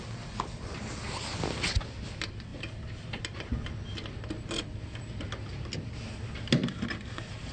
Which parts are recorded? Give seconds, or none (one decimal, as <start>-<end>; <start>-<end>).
0.0-7.5